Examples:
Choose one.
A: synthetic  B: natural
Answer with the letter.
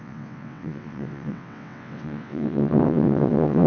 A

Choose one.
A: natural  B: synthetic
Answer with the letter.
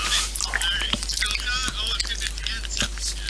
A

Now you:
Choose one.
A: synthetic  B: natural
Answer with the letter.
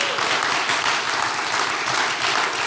B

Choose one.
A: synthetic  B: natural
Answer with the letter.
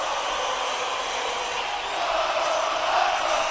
B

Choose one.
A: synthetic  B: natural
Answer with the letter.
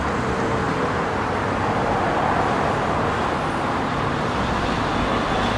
B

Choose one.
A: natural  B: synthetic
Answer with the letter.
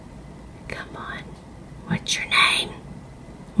A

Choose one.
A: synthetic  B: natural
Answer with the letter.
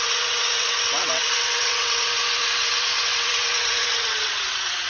A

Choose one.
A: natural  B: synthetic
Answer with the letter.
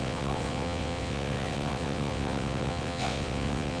B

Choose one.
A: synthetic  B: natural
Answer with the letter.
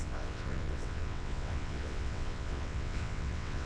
A